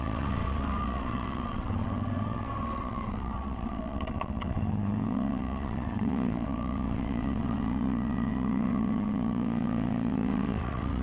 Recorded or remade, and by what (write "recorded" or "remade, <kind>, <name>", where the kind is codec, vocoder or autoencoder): remade, vocoder, WaveNeXt